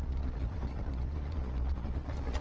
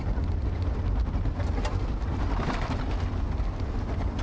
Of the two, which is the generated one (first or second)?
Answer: first